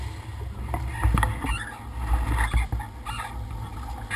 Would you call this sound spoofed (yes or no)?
no